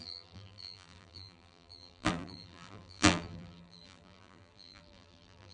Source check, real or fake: fake